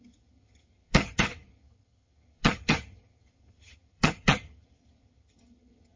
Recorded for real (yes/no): no